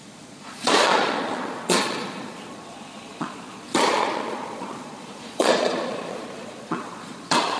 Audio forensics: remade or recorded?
remade